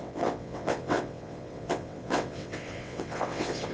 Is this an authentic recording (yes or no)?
no